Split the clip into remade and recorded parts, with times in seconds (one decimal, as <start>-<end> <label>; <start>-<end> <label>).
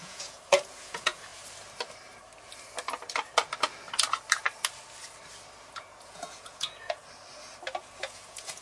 0.0-1.3 remade; 1.3-5.6 recorded; 5.6-7.0 remade; 7.0-8.0 recorded; 8.0-8.6 remade